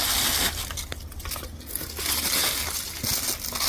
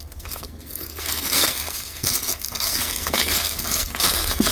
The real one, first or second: first